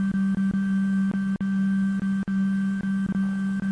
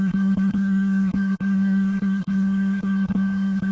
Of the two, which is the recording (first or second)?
first